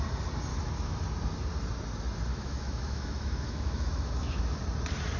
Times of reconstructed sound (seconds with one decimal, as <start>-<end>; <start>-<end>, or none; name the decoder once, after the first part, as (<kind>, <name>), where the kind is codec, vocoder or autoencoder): 0.5-1.0 (autoencoder, DAC-VAE); 2.3-4.4